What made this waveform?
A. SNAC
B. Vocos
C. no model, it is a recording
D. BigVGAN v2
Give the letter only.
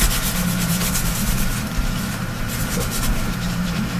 D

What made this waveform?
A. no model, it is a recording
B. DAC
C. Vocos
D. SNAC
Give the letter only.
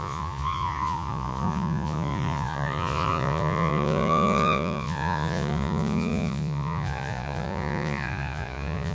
C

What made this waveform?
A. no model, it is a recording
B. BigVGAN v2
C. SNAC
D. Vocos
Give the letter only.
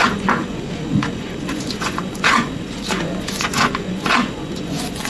D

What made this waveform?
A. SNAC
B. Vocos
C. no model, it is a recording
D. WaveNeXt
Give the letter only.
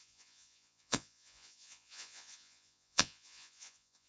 B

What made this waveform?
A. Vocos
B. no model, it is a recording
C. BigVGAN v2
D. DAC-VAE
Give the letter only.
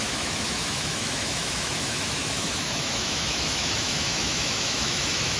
D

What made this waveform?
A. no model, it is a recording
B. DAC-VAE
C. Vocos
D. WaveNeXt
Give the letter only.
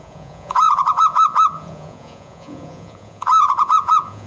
C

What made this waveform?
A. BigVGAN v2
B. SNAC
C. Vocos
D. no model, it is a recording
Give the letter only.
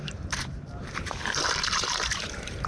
A